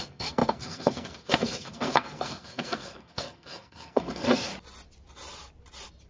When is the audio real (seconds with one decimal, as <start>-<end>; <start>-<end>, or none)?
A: 4.5-6.1